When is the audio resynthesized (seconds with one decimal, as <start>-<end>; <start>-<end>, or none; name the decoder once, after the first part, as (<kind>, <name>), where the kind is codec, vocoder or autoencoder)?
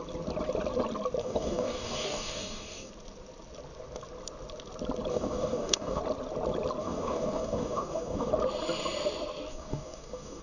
1.2-2.9 (codec, DAC); 5.1-6.0; 6.8-8.3; 9.5-10.4